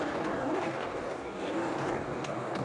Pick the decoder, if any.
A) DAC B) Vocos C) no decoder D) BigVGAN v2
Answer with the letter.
A